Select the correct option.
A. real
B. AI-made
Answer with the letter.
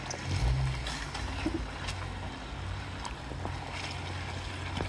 A